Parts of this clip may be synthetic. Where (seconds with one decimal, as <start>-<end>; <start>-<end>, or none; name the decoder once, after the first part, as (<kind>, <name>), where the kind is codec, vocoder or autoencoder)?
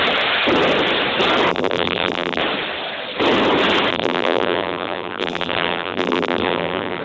1.5-2.4 (vocoder, BigVGAN v2); 3.9-7.0